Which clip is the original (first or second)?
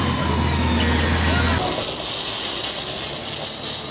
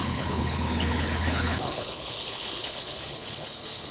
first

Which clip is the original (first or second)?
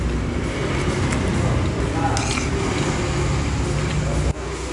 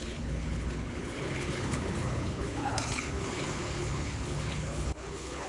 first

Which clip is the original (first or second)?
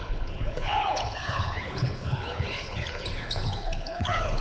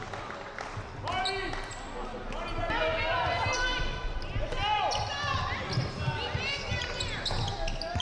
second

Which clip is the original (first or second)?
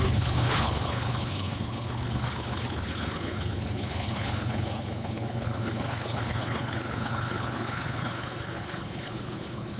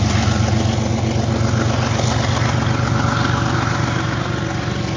second